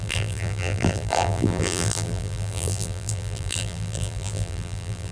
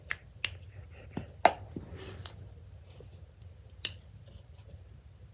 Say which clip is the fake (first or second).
first